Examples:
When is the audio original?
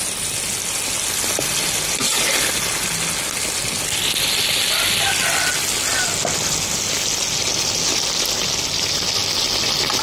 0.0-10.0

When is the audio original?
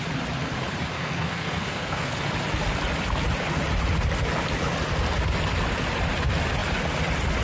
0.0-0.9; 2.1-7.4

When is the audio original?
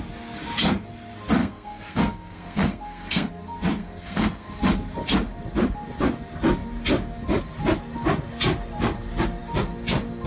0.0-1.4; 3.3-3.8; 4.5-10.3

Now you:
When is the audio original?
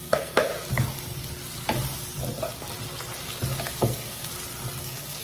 0.5-3.6; 4.3-4.8